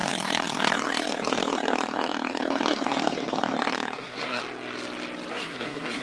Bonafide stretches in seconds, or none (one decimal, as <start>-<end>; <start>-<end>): 4.4-5.3